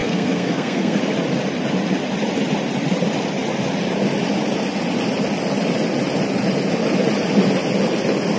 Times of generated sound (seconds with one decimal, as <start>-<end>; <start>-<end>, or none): 0.0-1.0